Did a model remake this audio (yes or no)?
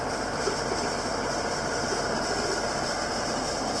yes